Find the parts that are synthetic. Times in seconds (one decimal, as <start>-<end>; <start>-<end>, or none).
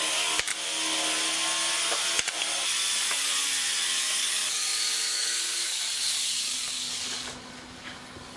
0.0-0.5; 4.0-8.4